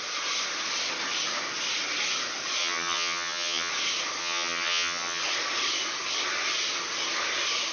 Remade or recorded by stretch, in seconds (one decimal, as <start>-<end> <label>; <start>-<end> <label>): 0.0-2.6 recorded; 2.6-3.7 remade; 3.7-4.2 recorded; 4.2-5.2 remade; 5.2-7.7 recorded